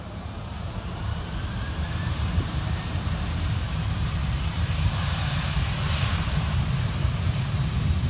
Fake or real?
fake